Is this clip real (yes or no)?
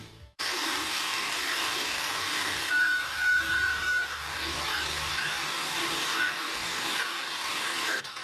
no